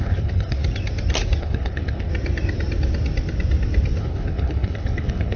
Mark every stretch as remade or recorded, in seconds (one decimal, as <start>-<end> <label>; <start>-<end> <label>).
0.0-0.6 remade; 0.6-1.4 recorded; 1.4-2.1 remade; 2.1-4.0 recorded; 4.0-5.4 remade